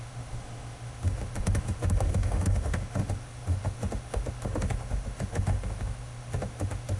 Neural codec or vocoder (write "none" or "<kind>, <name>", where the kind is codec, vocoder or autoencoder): autoencoder, DAC-VAE